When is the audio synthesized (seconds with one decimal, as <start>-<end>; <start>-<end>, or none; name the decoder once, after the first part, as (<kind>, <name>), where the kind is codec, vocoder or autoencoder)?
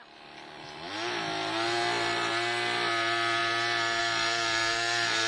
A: none